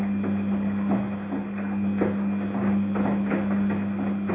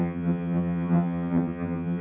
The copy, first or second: second